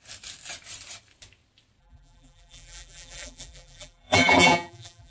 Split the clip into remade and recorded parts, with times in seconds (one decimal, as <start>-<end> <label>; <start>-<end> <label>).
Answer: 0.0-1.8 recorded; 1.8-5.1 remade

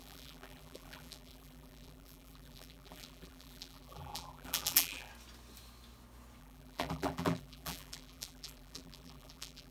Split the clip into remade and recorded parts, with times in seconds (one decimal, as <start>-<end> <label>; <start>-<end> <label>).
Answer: 0.0-5.1 remade; 5.1-6.4 recorded; 6.4-9.7 remade

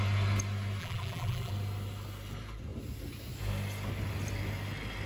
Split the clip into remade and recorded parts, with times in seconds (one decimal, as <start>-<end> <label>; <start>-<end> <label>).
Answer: 0.0-0.8 recorded; 0.8-1.5 remade; 1.5-5.1 recorded

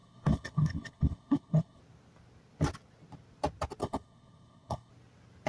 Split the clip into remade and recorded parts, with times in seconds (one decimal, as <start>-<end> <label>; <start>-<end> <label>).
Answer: 0.0-1.8 remade; 1.8-3.8 recorded; 3.8-4.9 remade; 4.9-5.5 recorded

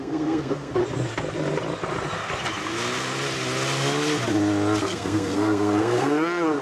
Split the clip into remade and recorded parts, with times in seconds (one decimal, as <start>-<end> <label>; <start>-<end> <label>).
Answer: 0.0-0.8 remade; 0.8-4.8 recorded; 4.8-6.6 remade

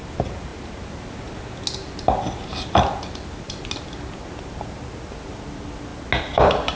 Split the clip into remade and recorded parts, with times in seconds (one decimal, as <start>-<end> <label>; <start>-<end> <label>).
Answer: 0.0-6.8 recorded

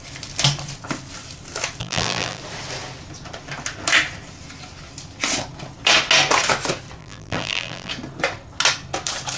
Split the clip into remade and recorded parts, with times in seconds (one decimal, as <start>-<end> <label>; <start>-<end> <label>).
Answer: 0.0-1.8 recorded; 1.8-2.4 remade; 2.4-7.0 recorded; 7.0-7.9 remade; 7.9-9.4 recorded